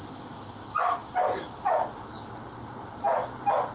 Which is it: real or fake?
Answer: real